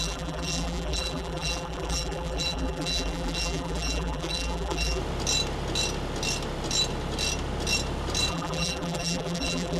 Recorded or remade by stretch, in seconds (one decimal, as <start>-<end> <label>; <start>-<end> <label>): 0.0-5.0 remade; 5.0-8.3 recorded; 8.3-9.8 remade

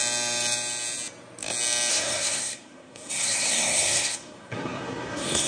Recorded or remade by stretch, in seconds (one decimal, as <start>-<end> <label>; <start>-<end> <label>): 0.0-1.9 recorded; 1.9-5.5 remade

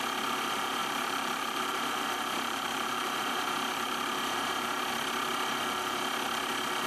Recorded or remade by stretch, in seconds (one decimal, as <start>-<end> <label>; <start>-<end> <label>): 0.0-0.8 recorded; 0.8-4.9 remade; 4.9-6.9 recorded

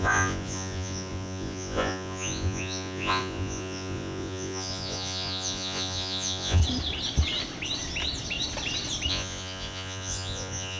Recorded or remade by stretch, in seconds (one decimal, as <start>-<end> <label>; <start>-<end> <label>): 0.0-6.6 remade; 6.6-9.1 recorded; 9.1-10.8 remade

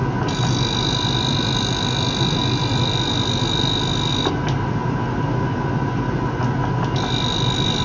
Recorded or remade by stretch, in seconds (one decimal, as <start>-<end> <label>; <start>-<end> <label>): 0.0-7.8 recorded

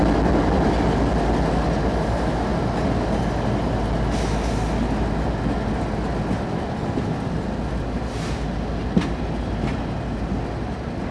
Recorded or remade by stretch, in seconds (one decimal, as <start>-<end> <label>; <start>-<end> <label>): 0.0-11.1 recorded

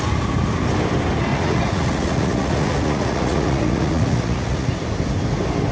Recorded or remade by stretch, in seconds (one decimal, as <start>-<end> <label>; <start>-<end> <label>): 0.0-1.3 recorded; 1.3-4.7 remade; 4.7-5.7 recorded

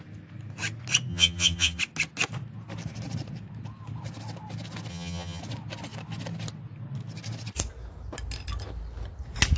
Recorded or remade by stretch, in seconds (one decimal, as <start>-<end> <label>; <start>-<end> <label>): 0.0-1.1 recorded; 1.1-1.8 remade; 1.8-4.9 recorded; 4.9-5.4 remade; 5.4-9.6 recorded